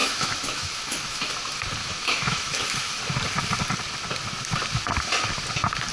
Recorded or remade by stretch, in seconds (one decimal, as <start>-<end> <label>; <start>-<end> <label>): 0.0-1.3 remade; 1.3-1.8 recorded; 1.8-3.0 remade; 3.0-5.9 recorded